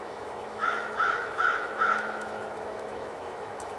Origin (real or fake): fake